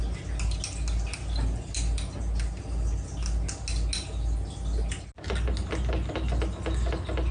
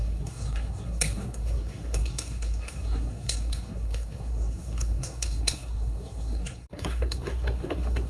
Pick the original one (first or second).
first